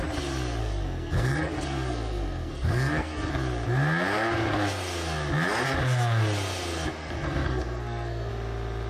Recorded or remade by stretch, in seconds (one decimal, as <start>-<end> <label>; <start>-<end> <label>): 0.0-0.6 recorded; 0.6-3.3 remade; 3.3-7.0 recorded; 7.0-8.3 remade; 8.3-8.9 recorded